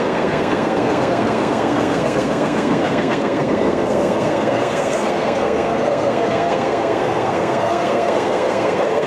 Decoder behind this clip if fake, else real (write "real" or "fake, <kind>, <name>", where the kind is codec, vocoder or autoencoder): fake, codec, SNAC